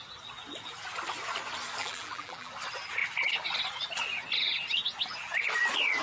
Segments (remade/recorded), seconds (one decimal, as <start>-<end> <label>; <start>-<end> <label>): 0.0-1.8 recorded; 1.8-2.5 remade; 2.5-6.0 recorded